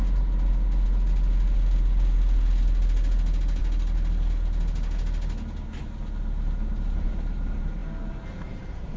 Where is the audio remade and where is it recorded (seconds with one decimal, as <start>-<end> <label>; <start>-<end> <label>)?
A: 0.0-9.0 recorded